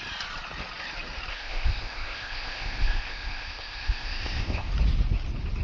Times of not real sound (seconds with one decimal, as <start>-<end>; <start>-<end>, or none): 1.3-4.7